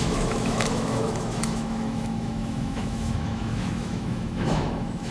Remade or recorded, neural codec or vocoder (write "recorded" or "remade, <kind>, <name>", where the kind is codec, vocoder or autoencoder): remade, autoencoder, DAC-VAE